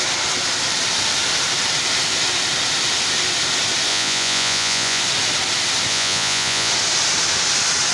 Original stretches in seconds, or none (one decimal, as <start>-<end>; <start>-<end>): 0.0-3.9; 5.0-5.9; 6.7-7.9